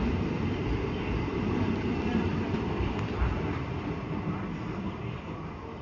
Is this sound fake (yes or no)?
no